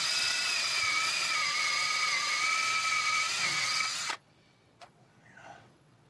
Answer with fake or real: fake